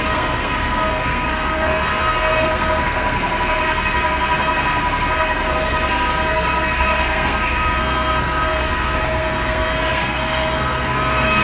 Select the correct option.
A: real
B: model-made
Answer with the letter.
B